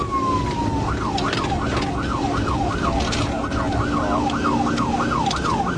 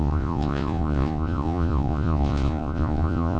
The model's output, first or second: second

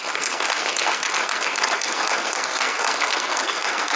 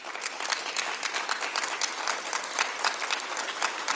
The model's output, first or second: first